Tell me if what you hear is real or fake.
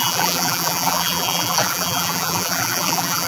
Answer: fake